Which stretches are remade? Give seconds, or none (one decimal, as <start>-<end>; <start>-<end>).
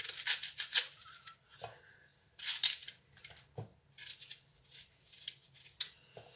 none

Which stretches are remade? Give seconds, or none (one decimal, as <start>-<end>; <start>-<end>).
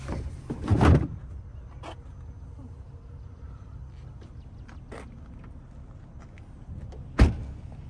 none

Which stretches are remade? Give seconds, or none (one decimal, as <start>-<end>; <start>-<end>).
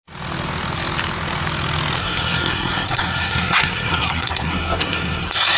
2.0-5.6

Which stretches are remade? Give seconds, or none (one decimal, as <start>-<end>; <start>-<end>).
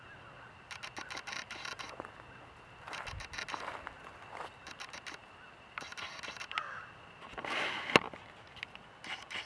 none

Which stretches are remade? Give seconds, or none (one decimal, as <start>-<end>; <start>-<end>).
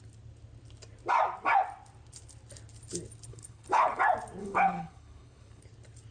3.3-4.0; 4.4-5.6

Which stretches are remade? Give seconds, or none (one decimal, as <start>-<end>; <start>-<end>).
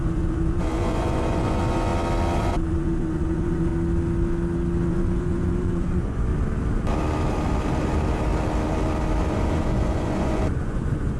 0.0-1.9; 2.4-3.7; 4.9-6.3; 9.3-11.2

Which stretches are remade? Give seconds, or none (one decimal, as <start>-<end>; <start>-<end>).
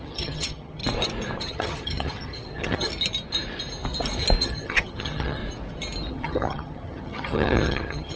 0.0-0.8; 1.4-2.9; 4.4-5.4; 6.1-8.2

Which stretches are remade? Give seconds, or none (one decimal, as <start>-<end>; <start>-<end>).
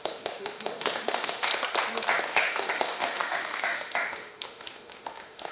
0.0-1.5; 2.2-5.5